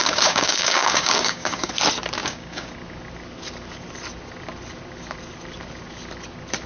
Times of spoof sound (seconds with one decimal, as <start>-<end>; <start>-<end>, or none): 0.0-1.7; 2.2-2.7